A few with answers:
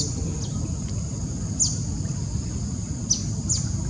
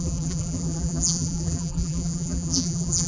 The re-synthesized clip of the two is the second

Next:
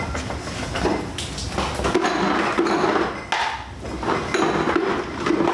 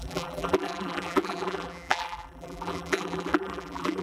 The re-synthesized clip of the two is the second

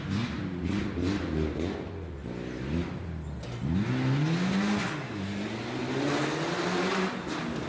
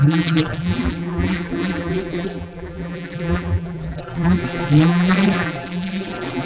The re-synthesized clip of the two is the second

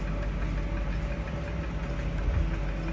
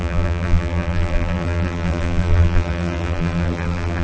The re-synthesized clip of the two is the second